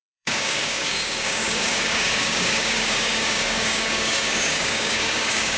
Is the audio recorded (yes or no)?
no